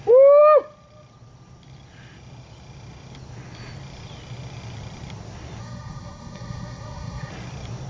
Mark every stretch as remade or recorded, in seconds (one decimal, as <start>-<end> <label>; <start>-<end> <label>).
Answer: 0.0-5.6 recorded; 5.6-7.3 remade; 7.3-7.9 recorded